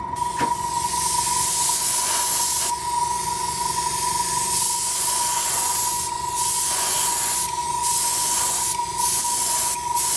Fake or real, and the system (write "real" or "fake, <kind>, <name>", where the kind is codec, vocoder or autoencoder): fake, vocoder, Vocos